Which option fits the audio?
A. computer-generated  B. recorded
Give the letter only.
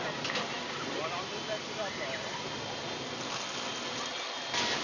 B